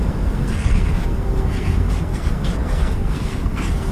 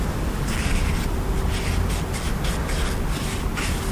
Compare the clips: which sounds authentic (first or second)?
second